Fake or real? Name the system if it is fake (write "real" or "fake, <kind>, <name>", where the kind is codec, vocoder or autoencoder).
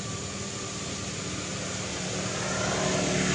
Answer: real